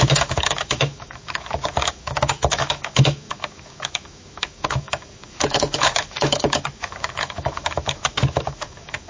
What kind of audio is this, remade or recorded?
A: remade